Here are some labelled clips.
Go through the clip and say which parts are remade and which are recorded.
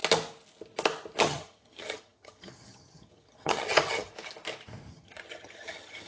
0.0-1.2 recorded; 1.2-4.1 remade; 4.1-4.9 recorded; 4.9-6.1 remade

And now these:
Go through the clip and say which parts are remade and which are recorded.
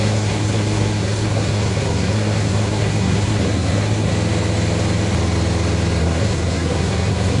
0.0-4.1 remade; 4.1-6.0 recorded; 6.0-7.4 remade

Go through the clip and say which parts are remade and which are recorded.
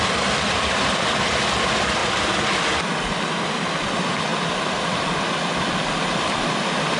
0.0-7.0 recorded